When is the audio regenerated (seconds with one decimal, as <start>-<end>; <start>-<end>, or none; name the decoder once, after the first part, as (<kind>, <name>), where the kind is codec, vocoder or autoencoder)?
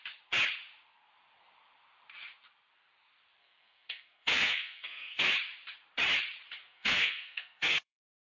3.4-5.3 (codec, SNAC); 6.6-8.3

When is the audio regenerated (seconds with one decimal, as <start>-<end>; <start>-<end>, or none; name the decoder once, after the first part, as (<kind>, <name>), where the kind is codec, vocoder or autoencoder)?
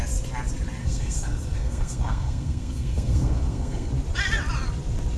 0.8-3.9 (codec, SNAC)